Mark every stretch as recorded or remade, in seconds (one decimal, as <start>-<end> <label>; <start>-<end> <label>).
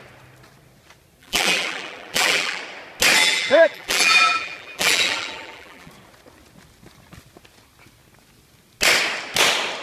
0.0-1.2 recorded; 1.2-2.6 remade; 2.6-3.2 recorded; 3.2-5.9 remade; 5.9-9.8 recorded